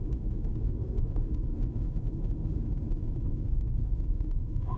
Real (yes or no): no